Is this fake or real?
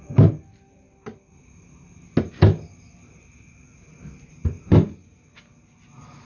real